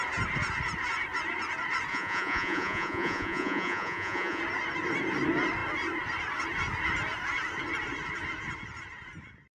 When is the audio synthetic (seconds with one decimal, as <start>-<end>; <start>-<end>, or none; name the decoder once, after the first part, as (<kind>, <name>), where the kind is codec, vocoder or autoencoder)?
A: 1.9-4.4 (vocoder, Vocos)